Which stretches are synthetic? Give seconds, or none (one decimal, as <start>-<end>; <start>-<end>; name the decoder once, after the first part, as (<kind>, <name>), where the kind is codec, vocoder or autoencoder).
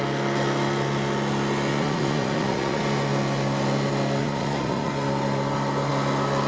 1.7-2.8 (vocoder, Vocos); 4.2-4.9